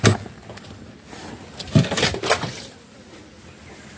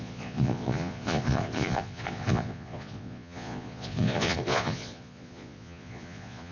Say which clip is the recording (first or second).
first